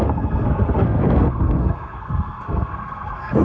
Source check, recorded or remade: remade